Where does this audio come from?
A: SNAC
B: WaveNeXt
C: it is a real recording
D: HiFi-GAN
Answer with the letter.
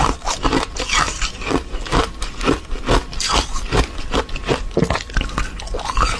C